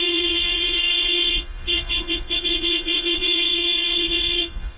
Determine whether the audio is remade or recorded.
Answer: remade